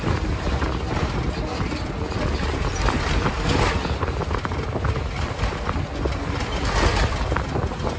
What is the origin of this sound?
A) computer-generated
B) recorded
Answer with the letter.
B